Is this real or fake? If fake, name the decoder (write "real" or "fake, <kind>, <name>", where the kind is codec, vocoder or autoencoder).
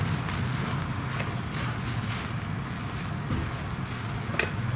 real